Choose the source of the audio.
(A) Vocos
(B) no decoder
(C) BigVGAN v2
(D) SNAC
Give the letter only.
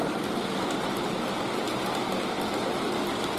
B